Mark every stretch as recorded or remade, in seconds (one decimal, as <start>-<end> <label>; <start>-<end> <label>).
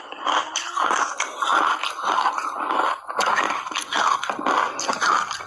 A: 0.0-5.5 recorded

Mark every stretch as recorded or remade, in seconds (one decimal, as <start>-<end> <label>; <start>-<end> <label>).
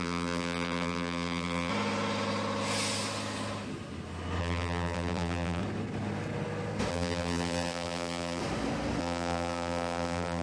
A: 0.0-1.7 remade; 1.7-4.4 recorded; 4.4-5.6 remade; 5.6-6.9 recorded; 6.9-8.4 remade; 8.4-9.0 recorded; 9.0-10.4 remade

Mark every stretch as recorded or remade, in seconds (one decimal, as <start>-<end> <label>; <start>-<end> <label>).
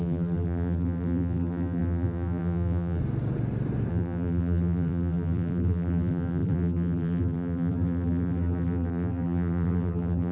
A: 0.0-3.0 remade; 3.0-3.9 recorded; 3.9-10.3 remade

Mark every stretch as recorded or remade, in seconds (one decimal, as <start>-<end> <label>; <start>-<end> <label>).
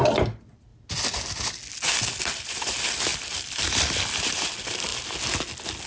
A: 0.0-0.7 remade; 0.7-1.9 recorded; 1.9-4.9 remade; 4.9-5.9 recorded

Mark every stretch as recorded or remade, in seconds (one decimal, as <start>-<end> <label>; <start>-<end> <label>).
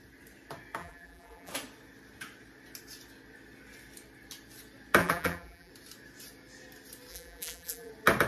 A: 0.0-0.8 recorded; 0.8-1.5 remade; 1.5-5.0 recorded; 5.0-5.7 remade; 5.7-7.1 recorded; 7.1-7.9 remade; 7.9-8.3 recorded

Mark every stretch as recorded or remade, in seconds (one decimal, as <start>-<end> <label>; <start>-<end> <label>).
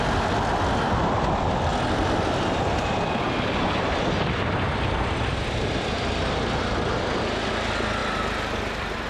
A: 0.0-1.7 recorded; 1.7-3.8 remade; 3.8-5.4 recorded; 5.4-7.5 remade; 7.5-8.0 recorded; 8.0-9.1 remade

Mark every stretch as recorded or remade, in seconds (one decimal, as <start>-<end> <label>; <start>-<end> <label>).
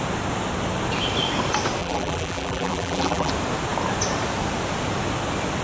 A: 0.0-1.8 recorded; 1.8-3.3 remade; 3.3-5.6 recorded